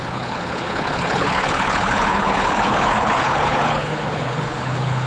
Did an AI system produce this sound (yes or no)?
yes